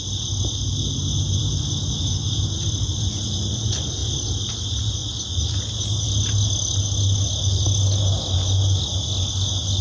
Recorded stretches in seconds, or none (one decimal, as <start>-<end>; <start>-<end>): 0.0-9.8